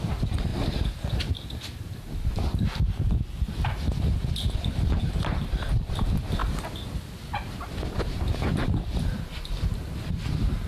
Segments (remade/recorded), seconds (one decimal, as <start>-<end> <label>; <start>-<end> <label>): 0.0-10.7 recorded